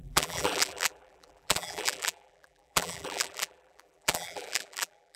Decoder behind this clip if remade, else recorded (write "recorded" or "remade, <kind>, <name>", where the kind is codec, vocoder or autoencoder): remade, vocoder, BigVGAN v2